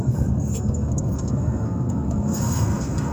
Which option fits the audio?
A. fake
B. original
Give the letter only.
A